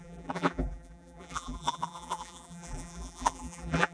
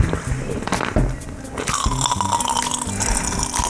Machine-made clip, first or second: first